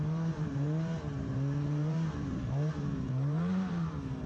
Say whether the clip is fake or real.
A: fake